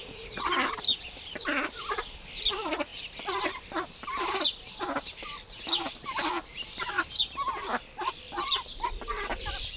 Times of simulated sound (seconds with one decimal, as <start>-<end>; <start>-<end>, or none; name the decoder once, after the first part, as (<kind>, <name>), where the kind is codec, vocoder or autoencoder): 0.0-0.5 (vocoder, Vocos)